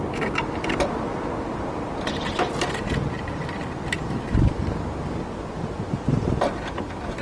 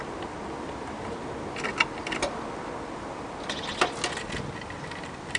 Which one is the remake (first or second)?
first